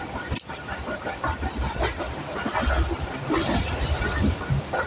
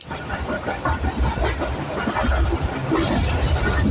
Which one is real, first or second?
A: second